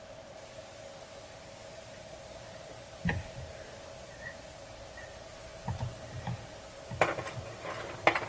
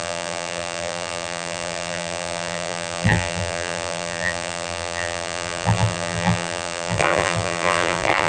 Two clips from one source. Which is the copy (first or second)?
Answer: second